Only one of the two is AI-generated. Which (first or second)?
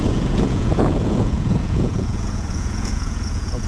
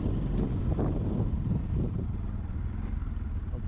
first